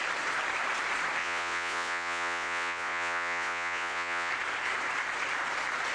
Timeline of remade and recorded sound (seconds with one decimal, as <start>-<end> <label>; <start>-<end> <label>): 0.0-1.2 recorded; 1.2-4.3 remade; 4.3-5.9 recorded